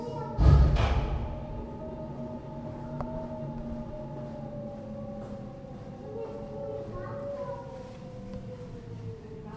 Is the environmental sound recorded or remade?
recorded